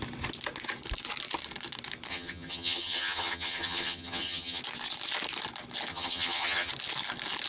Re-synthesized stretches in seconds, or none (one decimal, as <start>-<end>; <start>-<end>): 2.1-4.6; 5.9-6.7